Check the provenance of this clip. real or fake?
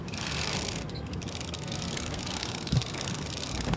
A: fake